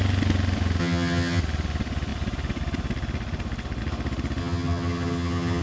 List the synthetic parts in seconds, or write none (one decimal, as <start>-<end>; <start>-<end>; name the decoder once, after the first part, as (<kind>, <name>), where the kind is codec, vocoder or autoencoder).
0.8-1.4 (vocoder, HiFi-GAN); 4.4-5.6